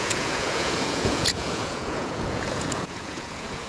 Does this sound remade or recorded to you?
remade